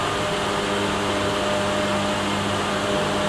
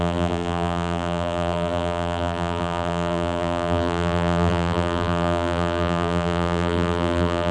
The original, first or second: first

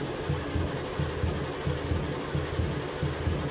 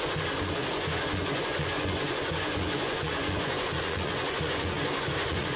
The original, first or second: first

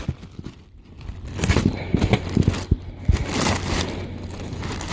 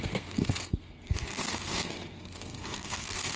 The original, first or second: first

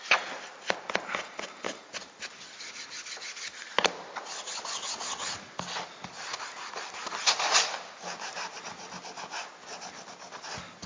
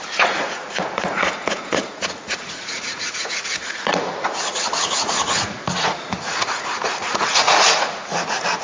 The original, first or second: first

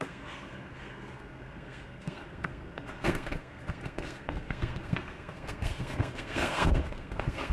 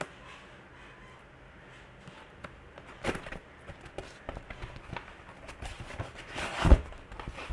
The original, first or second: second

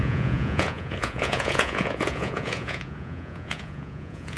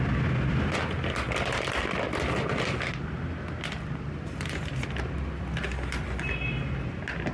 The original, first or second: second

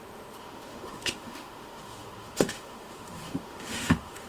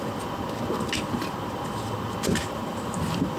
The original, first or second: second